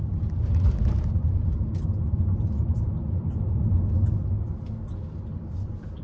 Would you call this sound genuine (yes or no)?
yes